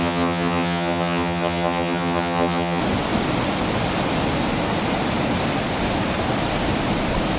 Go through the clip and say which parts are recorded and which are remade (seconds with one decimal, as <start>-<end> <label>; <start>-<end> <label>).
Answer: 0.0-2.8 remade; 2.8-7.4 recorded